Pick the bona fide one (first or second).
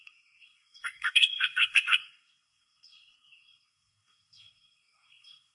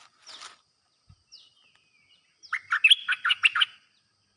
second